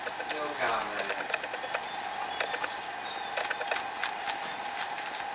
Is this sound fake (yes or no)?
no